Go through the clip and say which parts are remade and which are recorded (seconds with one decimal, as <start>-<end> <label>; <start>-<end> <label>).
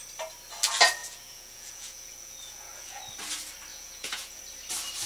0.0-1.0 recorded; 1.0-3.0 remade; 3.0-3.7 recorded; 3.7-4.4 remade; 4.4-5.1 recorded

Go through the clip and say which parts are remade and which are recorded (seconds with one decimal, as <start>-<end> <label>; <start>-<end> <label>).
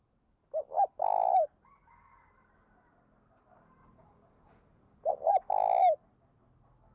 0.0-3.8 recorded; 3.8-5.5 remade; 5.5-6.9 recorded